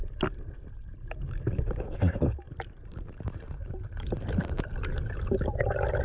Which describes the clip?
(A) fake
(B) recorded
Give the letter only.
B